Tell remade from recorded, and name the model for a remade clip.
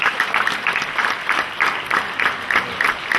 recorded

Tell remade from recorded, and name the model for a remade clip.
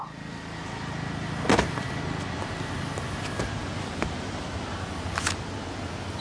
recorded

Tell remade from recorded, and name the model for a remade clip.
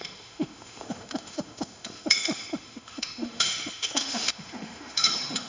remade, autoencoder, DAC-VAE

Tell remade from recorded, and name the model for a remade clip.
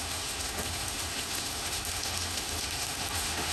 remade, autoencoder, DAC-VAE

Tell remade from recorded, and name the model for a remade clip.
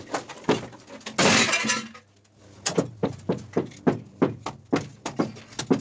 recorded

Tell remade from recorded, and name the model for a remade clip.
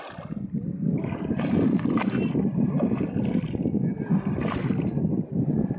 recorded